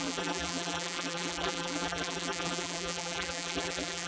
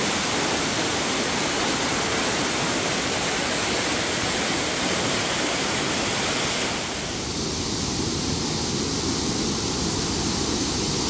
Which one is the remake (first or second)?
first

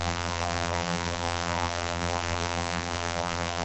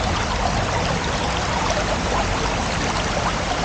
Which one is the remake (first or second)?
first